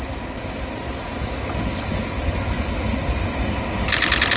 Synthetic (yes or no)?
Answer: no